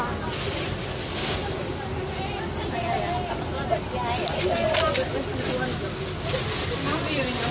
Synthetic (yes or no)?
no